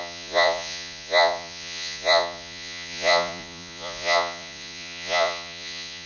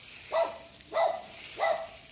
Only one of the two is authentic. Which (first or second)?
second